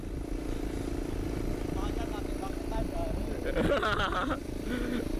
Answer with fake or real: real